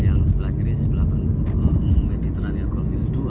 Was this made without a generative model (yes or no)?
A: yes